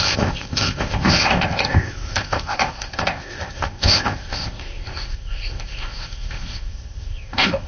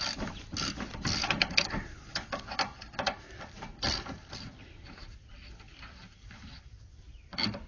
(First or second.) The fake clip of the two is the first